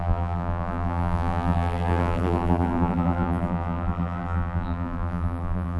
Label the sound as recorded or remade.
remade